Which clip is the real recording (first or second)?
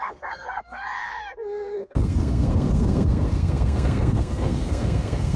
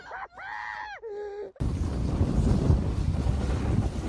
second